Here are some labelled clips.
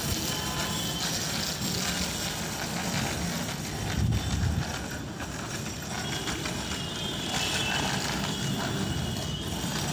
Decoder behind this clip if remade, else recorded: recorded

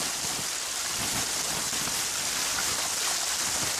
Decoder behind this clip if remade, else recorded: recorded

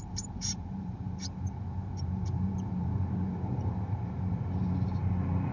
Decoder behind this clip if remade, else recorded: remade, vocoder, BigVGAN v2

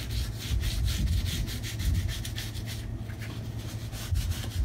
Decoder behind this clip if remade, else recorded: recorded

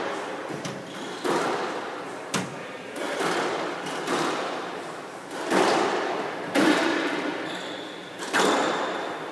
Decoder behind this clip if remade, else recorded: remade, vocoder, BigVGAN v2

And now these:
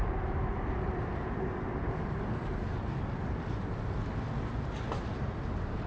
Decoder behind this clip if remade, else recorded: recorded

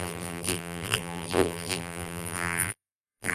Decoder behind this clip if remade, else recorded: remade, vocoder, BigVGAN v2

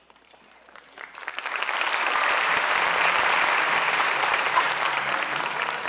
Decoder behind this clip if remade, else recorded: remade, vocoder, BigVGAN v2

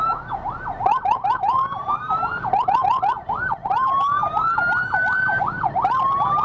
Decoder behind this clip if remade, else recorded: recorded